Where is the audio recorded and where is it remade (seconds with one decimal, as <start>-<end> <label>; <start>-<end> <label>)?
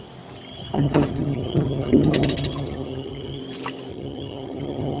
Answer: 0.0-0.5 recorded; 0.5-3.4 remade; 3.4-3.9 recorded; 3.9-5.0 remade